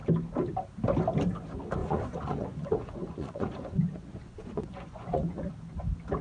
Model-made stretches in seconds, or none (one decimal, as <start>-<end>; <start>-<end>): 1.8-5.5